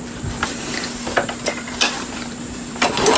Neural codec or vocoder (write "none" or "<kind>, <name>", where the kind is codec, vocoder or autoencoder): vocoder, BigVGAN v2